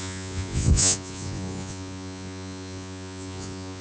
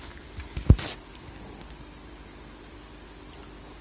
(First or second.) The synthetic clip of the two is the first